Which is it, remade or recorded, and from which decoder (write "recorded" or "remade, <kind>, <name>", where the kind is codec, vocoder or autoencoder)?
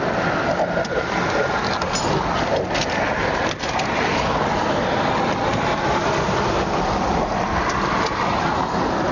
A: recorded